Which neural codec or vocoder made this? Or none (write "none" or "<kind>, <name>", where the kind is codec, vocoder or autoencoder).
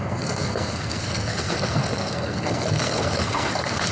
codec, SNAC